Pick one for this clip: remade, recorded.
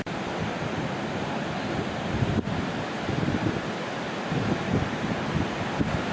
recorded